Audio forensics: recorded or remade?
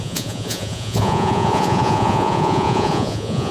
remade